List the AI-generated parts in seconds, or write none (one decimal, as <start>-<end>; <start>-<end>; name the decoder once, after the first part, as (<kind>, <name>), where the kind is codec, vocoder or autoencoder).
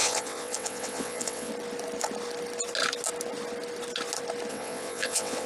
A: 0.0-1.5 (vocoder, WaveNeXt); 4.5-5.5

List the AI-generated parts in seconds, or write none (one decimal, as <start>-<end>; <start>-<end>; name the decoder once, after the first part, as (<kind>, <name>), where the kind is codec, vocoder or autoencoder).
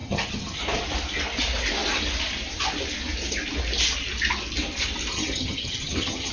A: 0.0-0.6 (vocoder, HiFi-GAN); 5.1-6.3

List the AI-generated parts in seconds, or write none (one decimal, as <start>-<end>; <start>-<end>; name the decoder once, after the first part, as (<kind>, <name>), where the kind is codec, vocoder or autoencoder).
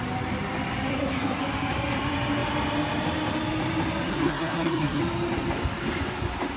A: 0.9-1.4 (codec, SNAC); 4.1-5.0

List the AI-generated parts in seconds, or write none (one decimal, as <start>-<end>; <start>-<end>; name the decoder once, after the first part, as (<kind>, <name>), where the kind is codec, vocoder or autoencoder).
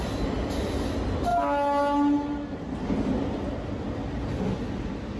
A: none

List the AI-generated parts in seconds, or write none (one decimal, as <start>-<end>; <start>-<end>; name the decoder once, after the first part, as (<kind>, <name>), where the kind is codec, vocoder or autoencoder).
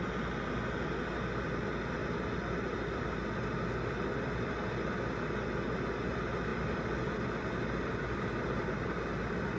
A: none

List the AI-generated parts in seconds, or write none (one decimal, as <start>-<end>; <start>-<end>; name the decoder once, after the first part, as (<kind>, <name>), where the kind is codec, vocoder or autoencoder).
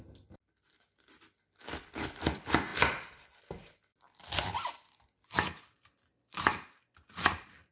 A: none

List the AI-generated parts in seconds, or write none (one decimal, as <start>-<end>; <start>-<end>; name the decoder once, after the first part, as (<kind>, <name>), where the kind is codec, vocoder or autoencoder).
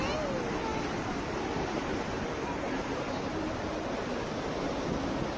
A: 0.7-3.7 (vocoder, BigVGAN v2)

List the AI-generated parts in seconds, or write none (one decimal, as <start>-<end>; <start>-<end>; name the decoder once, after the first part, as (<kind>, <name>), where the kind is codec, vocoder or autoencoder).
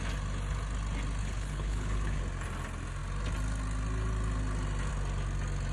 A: 1.2-2.2 (codec, HILCodec)